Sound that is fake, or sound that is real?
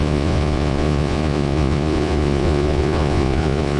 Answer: fake